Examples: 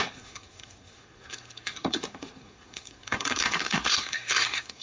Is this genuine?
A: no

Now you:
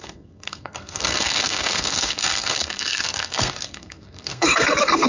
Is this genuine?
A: no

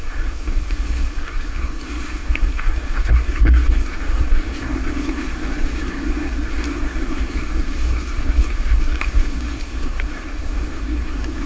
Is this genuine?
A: no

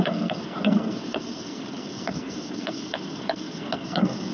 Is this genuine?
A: no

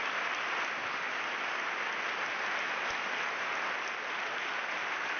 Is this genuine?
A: yes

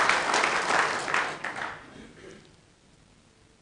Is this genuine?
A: yes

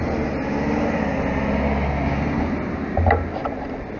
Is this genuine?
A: yes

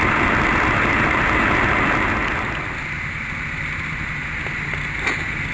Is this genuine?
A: yes